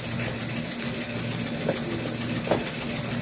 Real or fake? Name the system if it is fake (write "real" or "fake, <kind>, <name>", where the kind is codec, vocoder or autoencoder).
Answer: real